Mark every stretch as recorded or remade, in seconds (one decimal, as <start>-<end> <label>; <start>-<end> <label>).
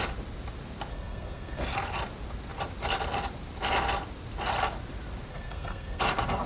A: 0.0-0.9 recorded; 0.9-1.6 remade; 1.6-5.3 recorded; 5.3-6.0 remade; 6.0-6.5 recorded